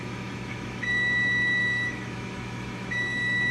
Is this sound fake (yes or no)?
yes